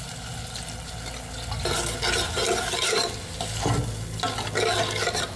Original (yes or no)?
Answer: yes